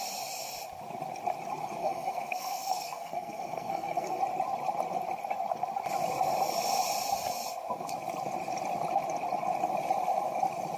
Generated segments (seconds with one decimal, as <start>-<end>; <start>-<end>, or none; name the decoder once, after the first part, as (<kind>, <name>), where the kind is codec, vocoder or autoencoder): 1.8-4.2 (codec, SNAC)